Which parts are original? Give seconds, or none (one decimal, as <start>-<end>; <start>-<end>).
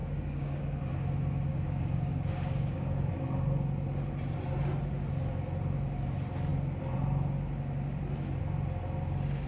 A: 0.6-1.5; 3.1-9.5